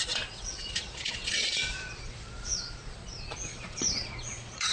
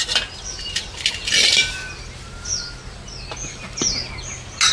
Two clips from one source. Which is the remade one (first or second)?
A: first